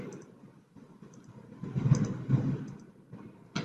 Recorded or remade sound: recorded